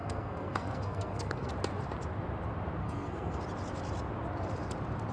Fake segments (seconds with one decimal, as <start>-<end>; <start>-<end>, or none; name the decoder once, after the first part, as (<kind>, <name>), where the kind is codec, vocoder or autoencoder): 0.0-1.5 (codec, SNAC); 2.8-3.4